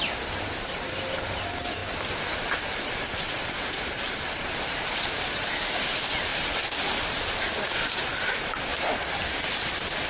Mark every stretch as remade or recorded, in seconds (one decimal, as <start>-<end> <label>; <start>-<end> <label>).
0.0-1.8 remade; 1.8-2.4 recorded; 2.4-8.7 remade; 8.7-10.1 recorded